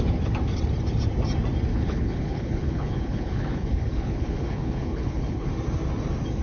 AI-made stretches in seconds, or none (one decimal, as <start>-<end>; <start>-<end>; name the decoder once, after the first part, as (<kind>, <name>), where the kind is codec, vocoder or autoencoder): 1.7-5.5 (codec, HILCodec)